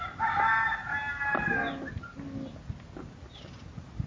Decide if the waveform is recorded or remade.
recorded